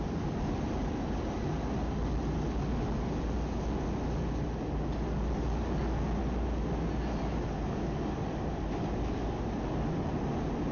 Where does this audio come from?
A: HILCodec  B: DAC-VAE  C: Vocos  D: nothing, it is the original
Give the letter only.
D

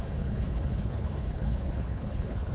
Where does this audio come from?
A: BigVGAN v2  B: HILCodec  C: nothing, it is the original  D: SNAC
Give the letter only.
B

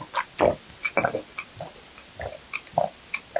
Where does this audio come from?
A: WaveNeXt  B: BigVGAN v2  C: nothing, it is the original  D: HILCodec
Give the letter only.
C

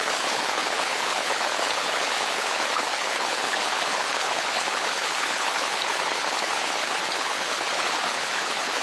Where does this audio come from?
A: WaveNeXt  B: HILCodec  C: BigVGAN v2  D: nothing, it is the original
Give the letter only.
B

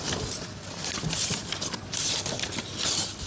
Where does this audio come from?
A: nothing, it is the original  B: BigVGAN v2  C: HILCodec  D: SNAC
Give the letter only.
A